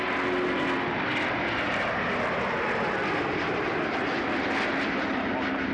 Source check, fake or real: real